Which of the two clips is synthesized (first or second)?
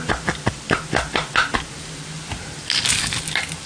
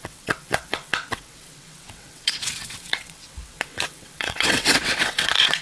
second